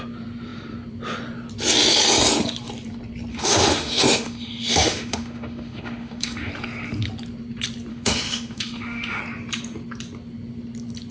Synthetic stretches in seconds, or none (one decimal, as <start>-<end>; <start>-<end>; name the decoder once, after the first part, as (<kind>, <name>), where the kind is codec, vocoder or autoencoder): 3.3-6.5 (autoencoder, DAC-VAE); 7.9-9.2